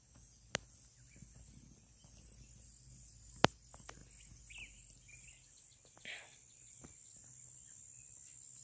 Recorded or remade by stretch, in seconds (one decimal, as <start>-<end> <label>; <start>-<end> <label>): 0.0-8.6 recorded